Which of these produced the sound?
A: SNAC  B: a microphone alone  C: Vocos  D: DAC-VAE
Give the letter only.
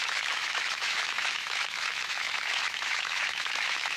D